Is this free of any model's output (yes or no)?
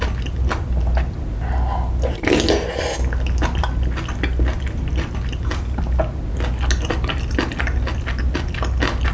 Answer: yes